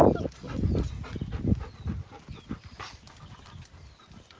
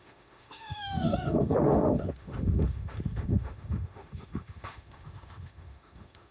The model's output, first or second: second